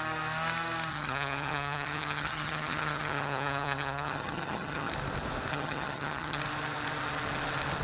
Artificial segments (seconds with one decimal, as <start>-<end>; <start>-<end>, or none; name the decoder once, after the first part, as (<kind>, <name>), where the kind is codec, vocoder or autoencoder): 0.9-4.9 (vocoder, HiFi-GAN); 5.5-6.4